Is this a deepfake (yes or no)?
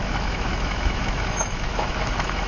yes